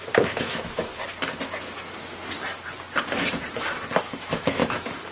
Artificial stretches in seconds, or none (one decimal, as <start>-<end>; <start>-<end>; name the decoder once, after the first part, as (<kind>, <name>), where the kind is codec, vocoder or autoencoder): 0.0-0.9 (autoencoder, DAC-VAE); 4.0-5.1